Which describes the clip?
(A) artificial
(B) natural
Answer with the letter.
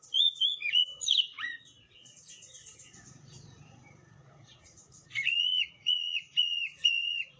A